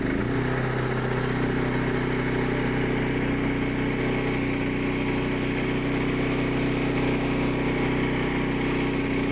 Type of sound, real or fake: real